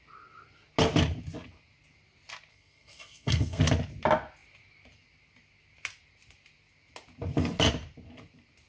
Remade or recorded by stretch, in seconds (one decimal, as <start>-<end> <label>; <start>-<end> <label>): 0.0-2.5 recorded; 2.5-3.6 remade; 3.6-8.7 recorded